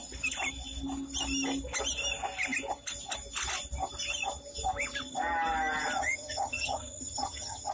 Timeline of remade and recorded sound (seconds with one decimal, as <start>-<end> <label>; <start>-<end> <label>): 0.0-6.0 recorded; 6.0-7.7 remade